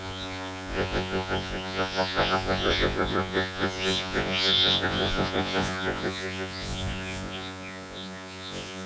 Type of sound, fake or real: fake